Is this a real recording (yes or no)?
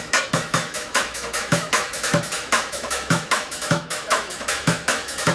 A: no